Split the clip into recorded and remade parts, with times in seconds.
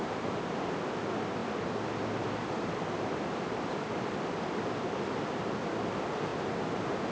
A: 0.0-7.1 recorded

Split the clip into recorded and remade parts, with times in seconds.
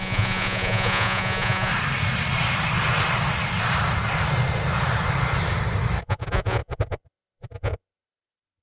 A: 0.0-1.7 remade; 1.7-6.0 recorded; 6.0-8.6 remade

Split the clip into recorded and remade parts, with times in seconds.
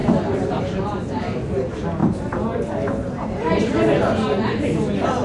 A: 0.0-5.2 recorded